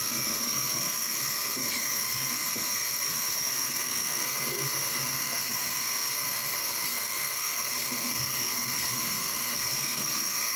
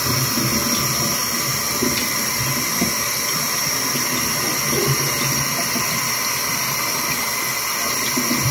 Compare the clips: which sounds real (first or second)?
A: second